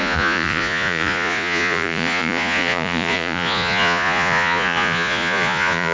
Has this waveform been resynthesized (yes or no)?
yes